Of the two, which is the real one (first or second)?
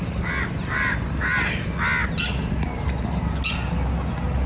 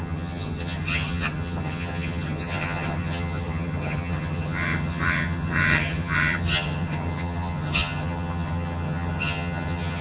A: first